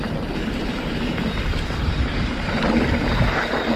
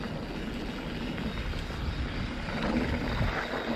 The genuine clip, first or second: second